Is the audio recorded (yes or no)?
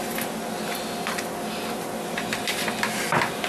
yes